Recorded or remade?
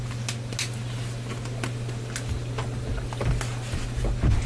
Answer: recorded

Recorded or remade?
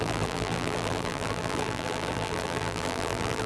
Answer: remade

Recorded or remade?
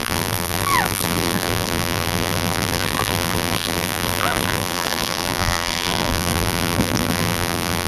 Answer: remade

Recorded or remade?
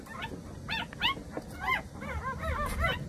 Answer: recorded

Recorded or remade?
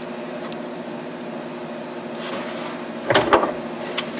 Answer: recorded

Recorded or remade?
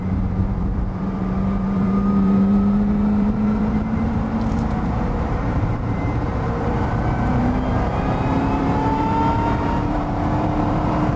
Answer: remade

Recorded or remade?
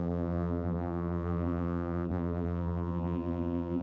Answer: remade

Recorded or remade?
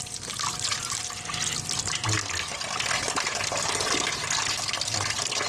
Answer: recorded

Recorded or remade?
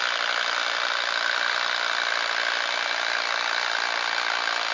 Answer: recorded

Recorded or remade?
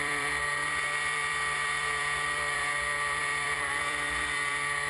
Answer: remade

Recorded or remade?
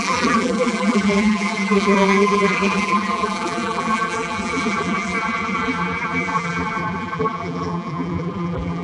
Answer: remade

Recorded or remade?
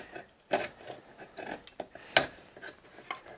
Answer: recorded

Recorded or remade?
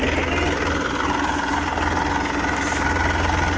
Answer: recorded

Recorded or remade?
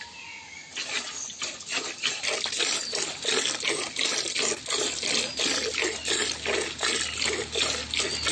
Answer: recorded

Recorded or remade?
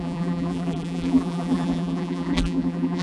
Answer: remade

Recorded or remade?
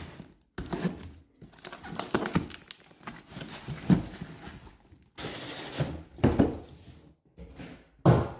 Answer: recorded